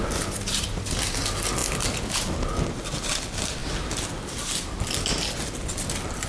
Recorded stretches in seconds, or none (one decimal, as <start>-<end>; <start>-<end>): 0.0-6.3